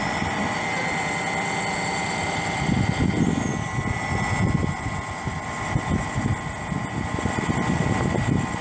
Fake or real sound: real